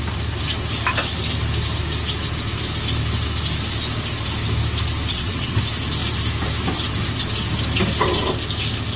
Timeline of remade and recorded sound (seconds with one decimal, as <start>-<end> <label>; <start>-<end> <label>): 0.0-5.1 recorded; 5.1-5.6 remade; 5.6-9.0 recorded